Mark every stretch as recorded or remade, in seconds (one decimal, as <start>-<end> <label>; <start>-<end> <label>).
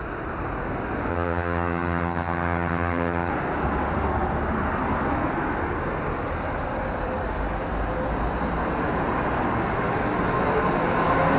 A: 0.0-1.1 recorded; 1.1-3.3 remade; 3.3-11.4 recorded